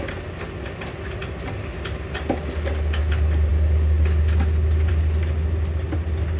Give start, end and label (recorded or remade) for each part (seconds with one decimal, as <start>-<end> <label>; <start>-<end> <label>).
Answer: 0.0-6.4 recorded